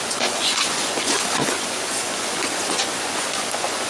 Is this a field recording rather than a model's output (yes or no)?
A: no